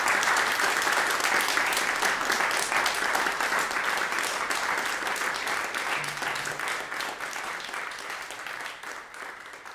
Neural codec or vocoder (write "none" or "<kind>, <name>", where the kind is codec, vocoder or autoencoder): none